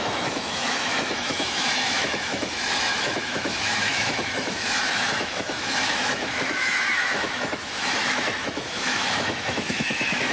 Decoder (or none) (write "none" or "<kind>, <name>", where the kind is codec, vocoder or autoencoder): autoencoder, DAC-VAE